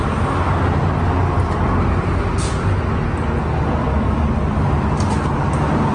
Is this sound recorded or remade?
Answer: recorded